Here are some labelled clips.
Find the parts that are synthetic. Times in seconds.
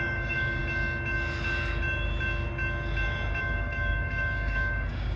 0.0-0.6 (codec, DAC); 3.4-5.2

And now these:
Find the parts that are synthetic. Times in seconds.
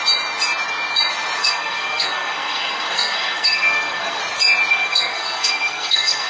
1.4-4.2 (codec, SNAC); 4.7-6.3